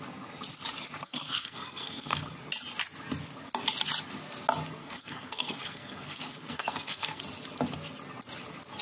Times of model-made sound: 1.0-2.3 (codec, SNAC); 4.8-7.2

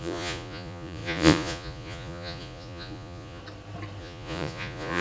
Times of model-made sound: 0.0-3.4 (vocoder, Vocos); 4.0-5.0

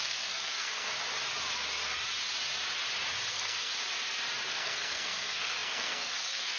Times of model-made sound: 0.0-0.9 (codec, SNAC); 3.3-3.7; 4.5-6.6

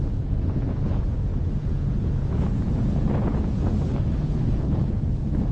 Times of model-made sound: 0.0-5.5 (vocoder, Vocos)

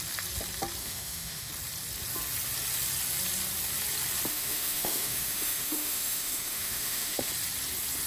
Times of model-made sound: 0.8-1.5 (autoencoder, DAC-VAE); 4.3-7.3

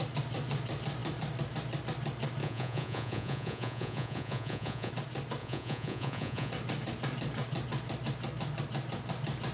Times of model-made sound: 2.4-4.9 (vocoder, Vocos); 5.4-6.5